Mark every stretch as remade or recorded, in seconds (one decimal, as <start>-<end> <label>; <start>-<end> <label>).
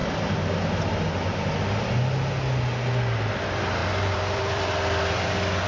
0.0-3.8 recorded; 3.8-4.7 remade; 4.7-5.7 recorded